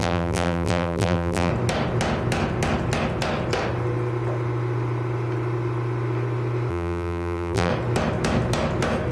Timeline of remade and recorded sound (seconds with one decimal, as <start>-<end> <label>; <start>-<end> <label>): 0.0-1.5 remade; 1.5-6.7 recorded; 6.7-7.7 remade; 7.7-9.1 recorded